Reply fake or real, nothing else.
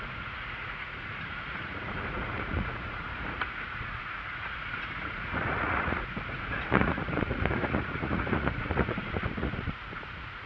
fake